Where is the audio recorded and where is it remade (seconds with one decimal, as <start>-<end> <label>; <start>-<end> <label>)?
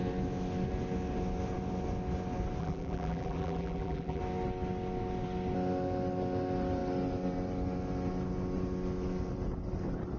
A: 0.0-2.6 recorded; 2.6-4.2 remade; 4.2-10.2 recorded